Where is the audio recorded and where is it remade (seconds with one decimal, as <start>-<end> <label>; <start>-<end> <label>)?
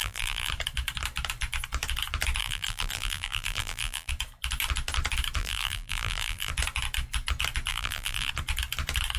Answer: 0.0-0.5 remade; 0.5-2.4 recorded; 2.4-4.1 remade; 4.1-5.4 recorded; 5.4-6.5 remade; 6.5-7.7 recorded; 7.7-8.3 remade; 8.3-9.2 recorded